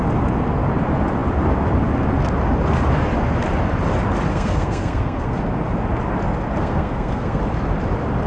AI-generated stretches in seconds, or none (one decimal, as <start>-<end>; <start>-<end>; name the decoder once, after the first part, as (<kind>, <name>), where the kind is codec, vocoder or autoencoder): 4.3-5.4 (codec, SNAC); 6.6-7.4